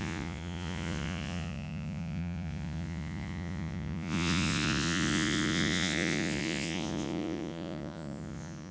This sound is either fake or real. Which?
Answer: fake